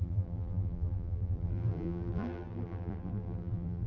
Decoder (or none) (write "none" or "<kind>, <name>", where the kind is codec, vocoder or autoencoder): vocoder, BigVGAN v2